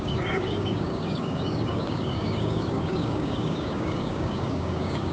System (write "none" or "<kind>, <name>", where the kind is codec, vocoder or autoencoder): codec, DAC